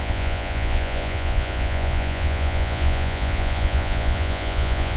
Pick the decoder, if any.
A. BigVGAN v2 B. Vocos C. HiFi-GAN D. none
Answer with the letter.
B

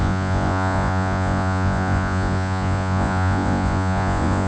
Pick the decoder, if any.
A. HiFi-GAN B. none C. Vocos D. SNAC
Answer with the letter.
C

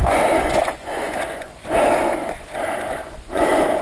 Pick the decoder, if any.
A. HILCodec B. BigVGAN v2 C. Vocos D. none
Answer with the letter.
C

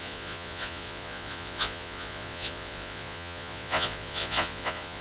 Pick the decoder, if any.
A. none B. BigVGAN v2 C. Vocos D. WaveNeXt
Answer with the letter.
C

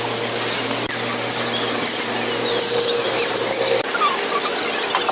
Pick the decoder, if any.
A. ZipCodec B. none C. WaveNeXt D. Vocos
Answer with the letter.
B